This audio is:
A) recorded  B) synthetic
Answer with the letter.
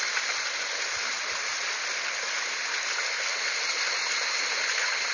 A